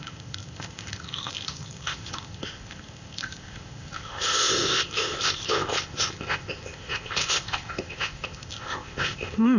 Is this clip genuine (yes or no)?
no